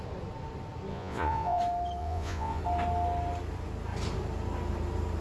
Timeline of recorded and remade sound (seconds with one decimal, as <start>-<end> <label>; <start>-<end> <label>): 0.0-0.9 recorded; 0.9-1.6 remade; 1.6-2.0 recorded; 2.0-2.6 remade; 2.6-5.2 recorded